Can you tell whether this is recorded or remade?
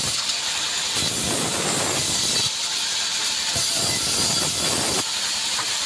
remade